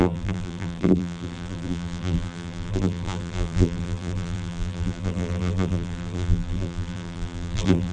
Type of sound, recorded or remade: remade